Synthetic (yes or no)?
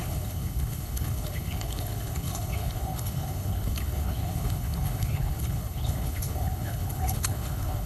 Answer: yes